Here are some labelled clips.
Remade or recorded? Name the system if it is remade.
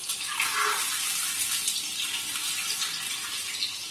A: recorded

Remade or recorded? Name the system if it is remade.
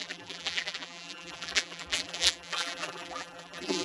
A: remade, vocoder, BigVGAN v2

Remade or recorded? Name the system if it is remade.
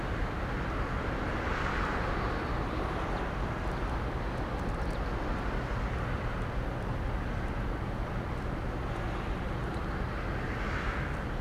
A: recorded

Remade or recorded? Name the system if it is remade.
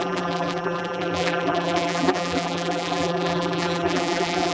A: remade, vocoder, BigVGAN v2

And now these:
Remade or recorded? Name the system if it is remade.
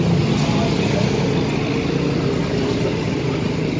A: recorded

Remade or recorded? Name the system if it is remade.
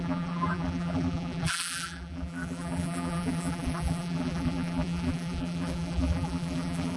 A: remade, vocoder, BigVGAN v2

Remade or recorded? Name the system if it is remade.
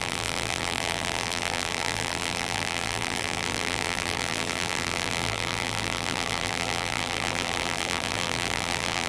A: remade, vocoder, BigVGAN v2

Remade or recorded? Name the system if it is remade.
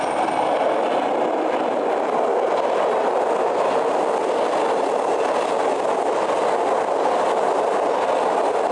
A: recorded